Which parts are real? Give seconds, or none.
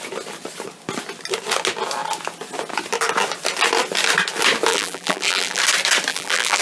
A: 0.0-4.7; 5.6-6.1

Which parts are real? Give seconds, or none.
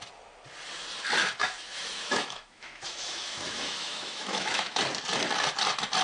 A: 0.0-1.2; 4.8-6.0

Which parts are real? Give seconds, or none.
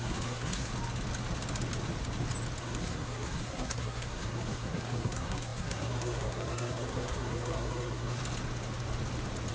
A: 0.7-2.6; 8.2-9.5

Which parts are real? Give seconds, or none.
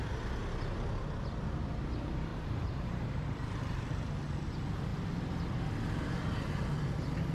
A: 0.0-2.3; 4.1-7.3